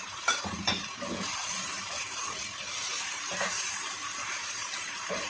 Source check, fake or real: fake